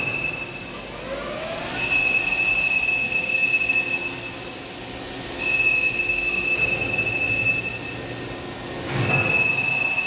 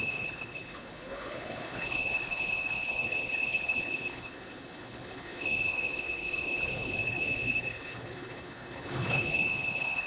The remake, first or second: second